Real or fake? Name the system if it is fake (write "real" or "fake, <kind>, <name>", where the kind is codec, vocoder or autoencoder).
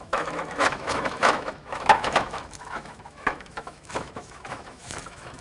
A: fake, autoencoder, DAC-VAE